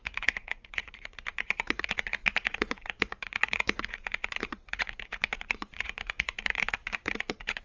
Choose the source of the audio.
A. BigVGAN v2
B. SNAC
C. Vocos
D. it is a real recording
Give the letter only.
C